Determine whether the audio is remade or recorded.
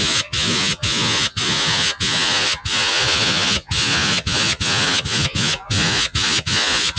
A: remade